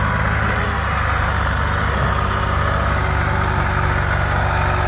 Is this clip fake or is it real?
real